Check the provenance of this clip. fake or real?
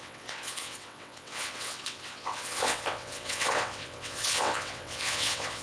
fake